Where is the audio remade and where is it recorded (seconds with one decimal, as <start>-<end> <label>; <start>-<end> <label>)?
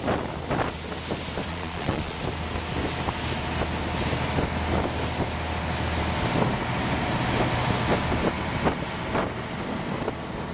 0.0-1.5 recorded; 1.5-2.2 remade; 2.2-10.5 recorded